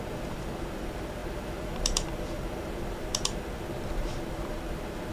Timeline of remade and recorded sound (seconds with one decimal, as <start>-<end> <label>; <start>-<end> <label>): 0.0-5.1 remade